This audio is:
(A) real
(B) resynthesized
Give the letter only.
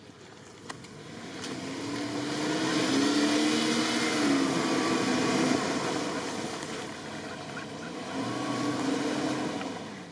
A